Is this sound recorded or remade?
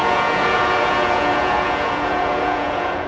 remade